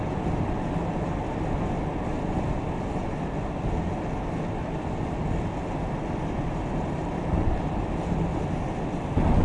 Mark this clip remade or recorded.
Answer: recorded